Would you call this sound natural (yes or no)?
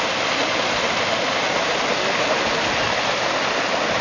yes